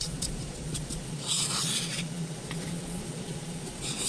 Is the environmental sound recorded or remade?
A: remade